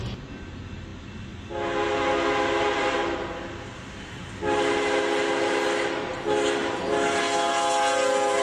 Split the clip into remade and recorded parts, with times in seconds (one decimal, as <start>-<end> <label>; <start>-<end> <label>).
0.0-8.4 recorded